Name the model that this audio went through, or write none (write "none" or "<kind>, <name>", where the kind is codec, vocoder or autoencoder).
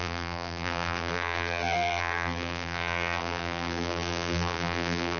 vocoder, BigVGAN v2